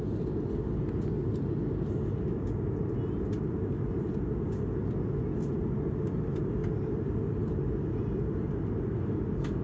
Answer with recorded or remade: recorded